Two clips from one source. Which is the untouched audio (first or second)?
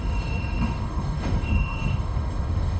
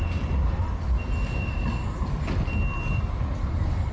second